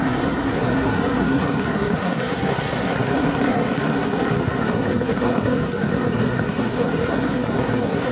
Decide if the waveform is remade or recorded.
remade